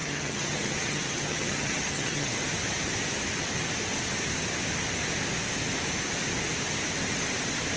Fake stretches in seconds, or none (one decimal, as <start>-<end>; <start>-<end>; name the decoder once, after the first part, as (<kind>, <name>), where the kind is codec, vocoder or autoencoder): 0.0-2.3 (vocoder, HiFi-GAN)